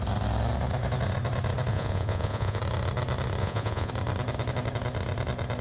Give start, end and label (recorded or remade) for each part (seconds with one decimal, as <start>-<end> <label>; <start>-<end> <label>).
0.0-1.7 recorded; 1.7-2.6 remade; 2.6-3.4 recorded; 3.4-3.9 remade; 3.9-5.6 recorded